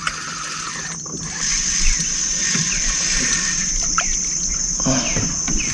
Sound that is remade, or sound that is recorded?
recorded